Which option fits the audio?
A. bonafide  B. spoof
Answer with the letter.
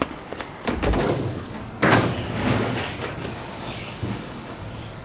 B